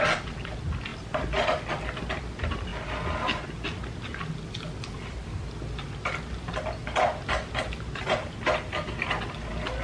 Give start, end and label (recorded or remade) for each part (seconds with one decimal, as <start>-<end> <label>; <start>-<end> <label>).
0.0-0.9 recorded; 0.9-1.7 remade; 1.7-9.8 recorded